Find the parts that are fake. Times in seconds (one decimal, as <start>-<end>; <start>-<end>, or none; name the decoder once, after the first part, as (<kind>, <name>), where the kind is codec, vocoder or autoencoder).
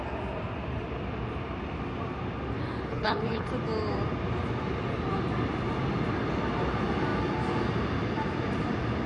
2.9-3.5 (codec, HILCodec)